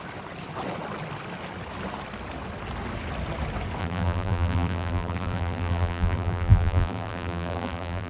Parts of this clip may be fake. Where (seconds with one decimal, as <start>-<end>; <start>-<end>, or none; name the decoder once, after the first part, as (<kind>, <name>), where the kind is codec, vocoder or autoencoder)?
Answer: 3.8-8.1 (vocoder, BigVGAN v2)